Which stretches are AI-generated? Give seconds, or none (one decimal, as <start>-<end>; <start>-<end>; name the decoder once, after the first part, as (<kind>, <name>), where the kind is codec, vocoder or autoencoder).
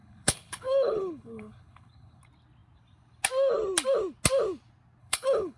0.0-2.2 (codec, HILCodec); 5.0-5.6